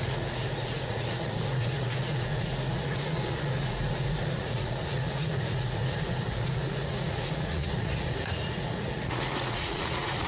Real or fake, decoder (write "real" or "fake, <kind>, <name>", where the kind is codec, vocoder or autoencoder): fake, vocoder, Vocos